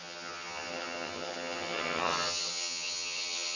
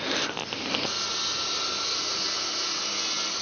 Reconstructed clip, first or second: first